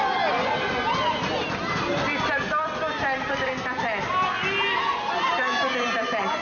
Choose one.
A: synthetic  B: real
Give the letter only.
B